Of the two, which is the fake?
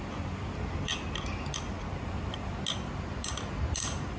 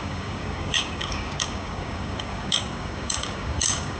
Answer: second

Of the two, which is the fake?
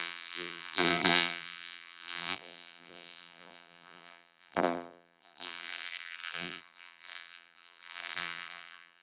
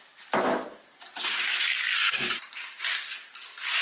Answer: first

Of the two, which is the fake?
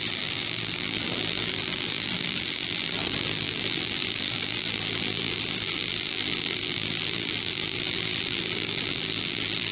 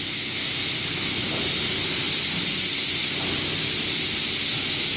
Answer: first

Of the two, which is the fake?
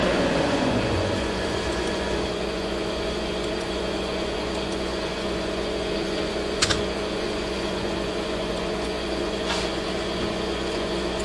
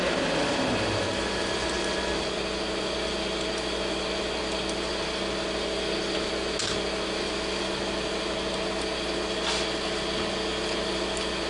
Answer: first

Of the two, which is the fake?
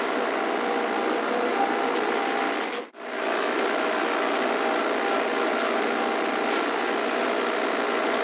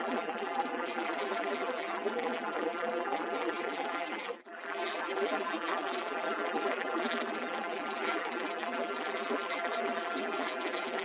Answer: second